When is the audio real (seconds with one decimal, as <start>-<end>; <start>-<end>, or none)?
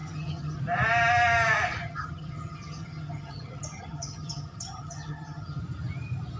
0.6-1.8; 5.6-6.4